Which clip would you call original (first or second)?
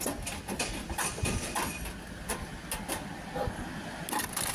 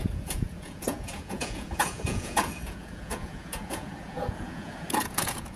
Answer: first